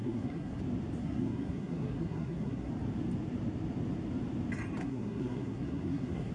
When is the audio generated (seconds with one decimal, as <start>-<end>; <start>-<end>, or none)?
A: 0.0-0.6; 1.0-2.7; 4.8-6.3